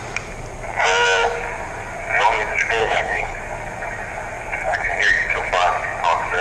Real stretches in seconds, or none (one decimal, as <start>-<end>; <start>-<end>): 0.0-2.8; 3.4-4.6; 5.5-6.4